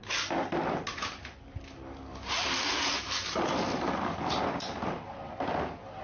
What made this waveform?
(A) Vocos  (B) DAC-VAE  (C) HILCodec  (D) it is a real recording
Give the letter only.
D